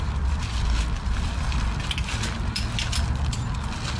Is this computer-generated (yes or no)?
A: no